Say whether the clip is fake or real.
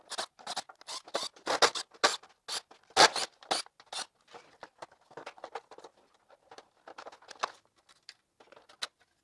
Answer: real